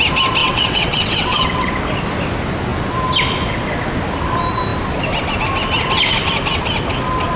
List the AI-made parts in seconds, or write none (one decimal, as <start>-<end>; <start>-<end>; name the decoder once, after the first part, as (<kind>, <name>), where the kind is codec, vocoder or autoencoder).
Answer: 0.4-1.7 (vocoder, WaveNeXt)